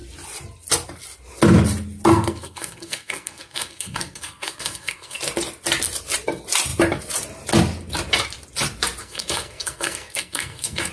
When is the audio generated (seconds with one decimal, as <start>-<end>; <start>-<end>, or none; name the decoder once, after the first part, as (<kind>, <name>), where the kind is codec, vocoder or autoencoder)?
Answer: 2.1-5.2 (codec, SNAC); 9.0-10.9